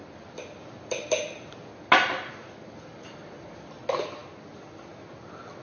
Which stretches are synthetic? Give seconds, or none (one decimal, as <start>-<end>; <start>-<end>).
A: 2.9-3.6